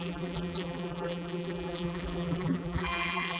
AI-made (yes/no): yes